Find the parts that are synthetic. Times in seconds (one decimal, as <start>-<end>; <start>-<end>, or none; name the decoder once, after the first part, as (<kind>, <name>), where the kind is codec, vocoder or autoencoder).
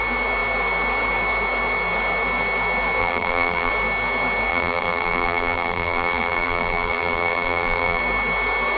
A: 3.0-3.7 (vocoder, BigVGAN v2); 4.5-8.0